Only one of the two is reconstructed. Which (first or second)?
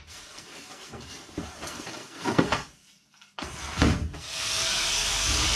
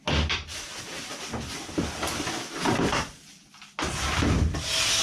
first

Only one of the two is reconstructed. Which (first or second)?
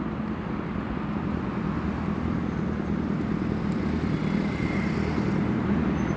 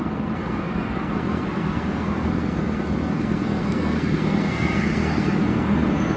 second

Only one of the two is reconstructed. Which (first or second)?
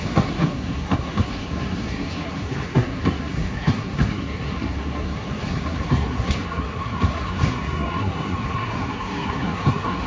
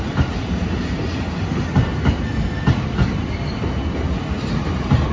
first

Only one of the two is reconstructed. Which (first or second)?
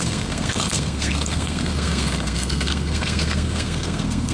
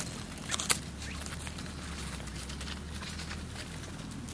first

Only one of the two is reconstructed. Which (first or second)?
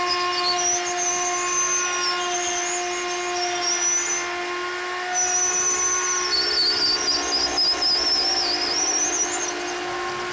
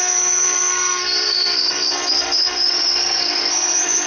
second